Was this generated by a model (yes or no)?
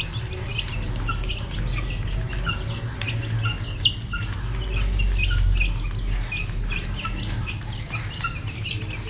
no